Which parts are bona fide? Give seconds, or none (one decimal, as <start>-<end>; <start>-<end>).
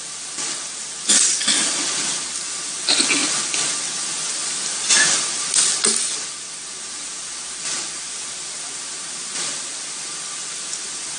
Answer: 0.0-11.2